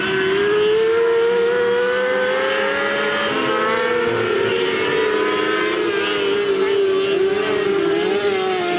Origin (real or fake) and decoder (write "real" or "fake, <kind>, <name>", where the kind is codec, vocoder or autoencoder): real